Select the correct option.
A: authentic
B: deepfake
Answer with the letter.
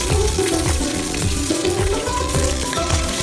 B